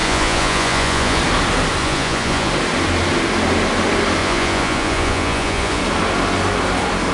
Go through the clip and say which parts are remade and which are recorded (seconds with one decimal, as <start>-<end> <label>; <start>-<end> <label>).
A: 0.0-1.2 remade; 1.2-1.8 recorded; 1.8-2.5 remade; 2.5-4.2 recorded; 4.2-5.8 remade; 5.8-7.1 recorded